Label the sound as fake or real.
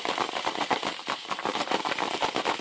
fake